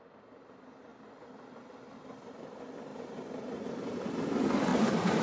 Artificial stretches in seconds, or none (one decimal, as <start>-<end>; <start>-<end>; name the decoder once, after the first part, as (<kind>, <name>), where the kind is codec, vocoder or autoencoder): 2.9-4.1 (vocoder, BigVGAN v2); 4.7-5.2